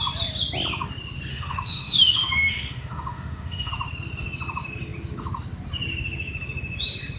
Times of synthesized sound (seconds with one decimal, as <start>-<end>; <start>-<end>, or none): 1.3-3.7